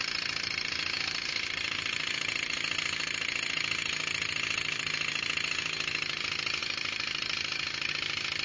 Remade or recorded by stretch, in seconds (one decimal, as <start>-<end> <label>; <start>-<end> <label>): 0.0-8.4 recorded

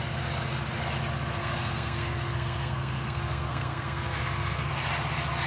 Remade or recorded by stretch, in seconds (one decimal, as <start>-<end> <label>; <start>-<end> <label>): 0.0-1.4 recorded; 1.4-4.7 remade; 4.7-5.5 recorded

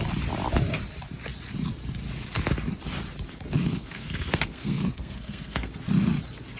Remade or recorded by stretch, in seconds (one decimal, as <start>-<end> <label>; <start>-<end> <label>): 0.0-3.6 recorded; 3.6-5.7 remade; 5.7-6.6 recorded

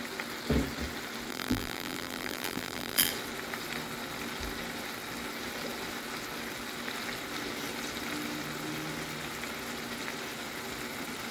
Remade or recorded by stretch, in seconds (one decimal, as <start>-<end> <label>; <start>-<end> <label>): 0.0-1.3 recorded; 1.3-3.1 remade; 3.1-11.3 recorded

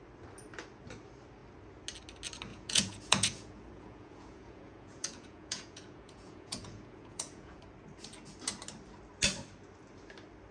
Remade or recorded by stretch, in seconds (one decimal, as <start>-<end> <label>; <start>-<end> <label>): 0.0-2.5 recorded; 2.5-7.6 remade; 7.6-10.5 recorded

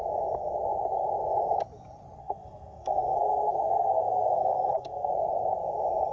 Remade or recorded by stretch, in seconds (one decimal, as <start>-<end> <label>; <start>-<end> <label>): 0.0-2.2 recorded; 2.2-5.1 remade; 5.1-6.1 recorded